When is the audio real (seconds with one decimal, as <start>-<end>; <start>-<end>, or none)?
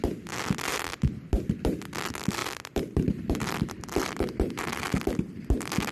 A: 0.0-2.4; 4.6-5.9